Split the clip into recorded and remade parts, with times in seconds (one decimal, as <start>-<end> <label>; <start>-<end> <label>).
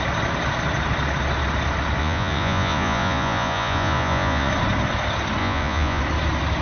0.0-2.0 recorded; 2.0-4.5 remade; 4.5-5.4 recorded; 5.4-6.0 remade; 6.0-6.6 recorded